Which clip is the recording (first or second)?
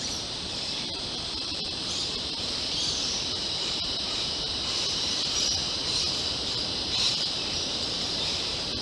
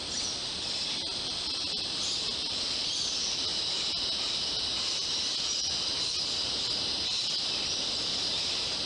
second